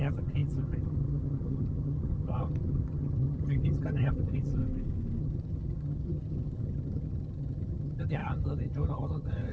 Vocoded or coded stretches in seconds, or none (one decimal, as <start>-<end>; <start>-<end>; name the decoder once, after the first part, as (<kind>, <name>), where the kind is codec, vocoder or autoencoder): 0.0-4.6 (vocoder, HiFi-GAN); 5.2-9.5